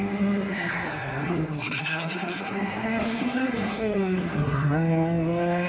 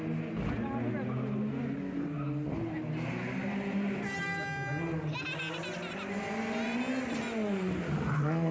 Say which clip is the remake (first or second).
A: first